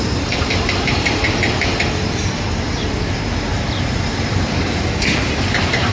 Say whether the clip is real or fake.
fake